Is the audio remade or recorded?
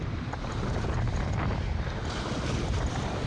recorded